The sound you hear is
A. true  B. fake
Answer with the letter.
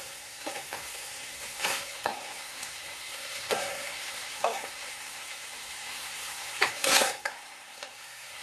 B